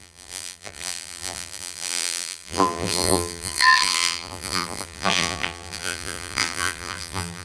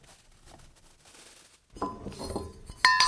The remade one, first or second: first